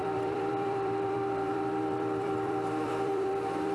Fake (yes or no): yes